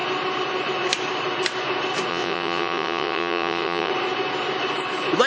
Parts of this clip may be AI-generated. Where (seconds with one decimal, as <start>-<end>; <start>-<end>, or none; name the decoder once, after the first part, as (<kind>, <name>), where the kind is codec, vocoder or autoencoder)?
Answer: 2.1-3.9 (vocoder, WaveNeXt)